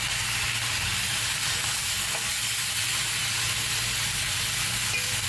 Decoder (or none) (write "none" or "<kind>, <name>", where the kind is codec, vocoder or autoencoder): none